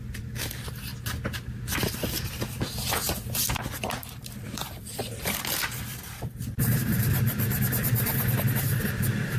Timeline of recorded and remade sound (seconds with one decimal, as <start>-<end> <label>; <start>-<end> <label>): 0.0-0.9 remade; 0.9-1.7 recorded; 1.7-3.0 remade; 3.0-3.8 recorded; 3.8-9.4 remade